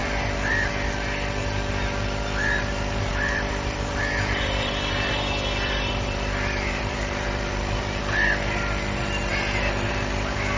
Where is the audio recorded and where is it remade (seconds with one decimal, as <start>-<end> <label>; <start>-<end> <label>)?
0.0-3.1 recorded; 3.1-8.0 remade; 8.0-10.6 recorded